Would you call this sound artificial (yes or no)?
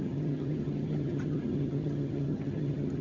yes